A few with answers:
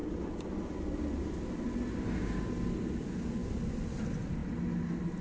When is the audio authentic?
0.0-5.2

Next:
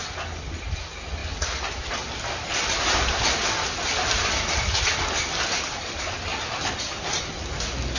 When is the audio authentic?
0.0-8.0

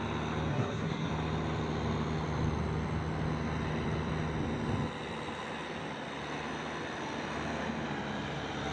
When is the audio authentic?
0.0-0.5; 1.1-8.7

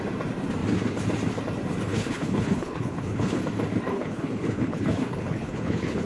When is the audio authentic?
0.0-1.9; 3.4-3.9